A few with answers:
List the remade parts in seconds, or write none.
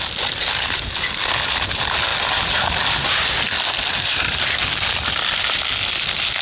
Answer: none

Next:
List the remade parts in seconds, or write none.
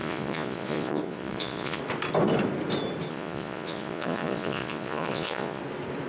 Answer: 0.0-1.8 (vocoder, Vocos); 3.1-5.6